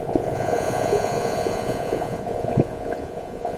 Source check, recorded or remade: remade